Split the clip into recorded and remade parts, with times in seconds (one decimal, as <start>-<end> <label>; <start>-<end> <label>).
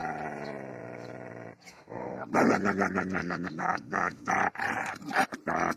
0.0-1.7 recorded; 1.7-2.2 remade; 2.2-3.2 recorded; 3.2-4.3 remade; 4.3-5.8 recorded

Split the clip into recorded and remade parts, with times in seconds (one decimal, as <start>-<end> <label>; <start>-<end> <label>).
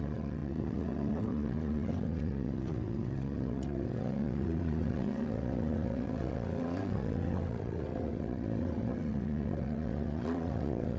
0.0-11.0 remade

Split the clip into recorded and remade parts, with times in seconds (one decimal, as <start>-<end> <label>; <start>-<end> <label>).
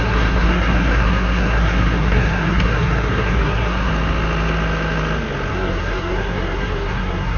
0.0-3.9 remade; 3.9-5.5 recorded; 5.5-7.4 remade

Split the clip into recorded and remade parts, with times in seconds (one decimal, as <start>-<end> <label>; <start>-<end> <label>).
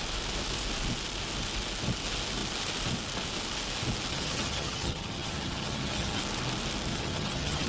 0.0-4.1 recorded; 4.1-6.2 remade; 6.2-6.9 recorded; 6.9-7.7 remade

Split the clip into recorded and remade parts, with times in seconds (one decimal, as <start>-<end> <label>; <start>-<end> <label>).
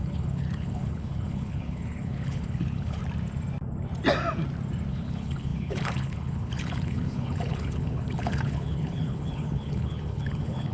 0.0-3.0 remade; 3.0-4.9 recorded; 4.9-10.7 remade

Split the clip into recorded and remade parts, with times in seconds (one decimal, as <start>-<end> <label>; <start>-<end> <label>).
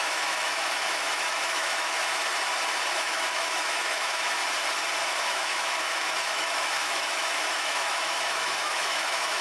0.0-2.3 remade; 2.3-2.9 recorded; 2.9-4.4 remade; 4.4-5.0 recorded; 5.0-9.4 remade